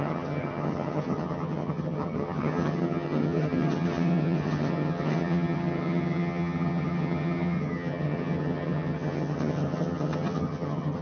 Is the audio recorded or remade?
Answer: remade